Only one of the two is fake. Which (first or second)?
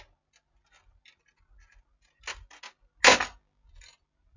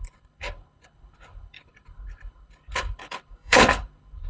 second